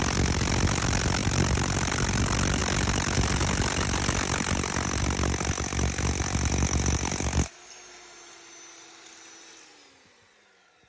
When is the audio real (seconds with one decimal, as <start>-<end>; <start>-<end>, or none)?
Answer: 0.0-10.9